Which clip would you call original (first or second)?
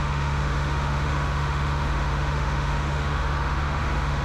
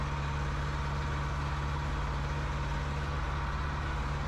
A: second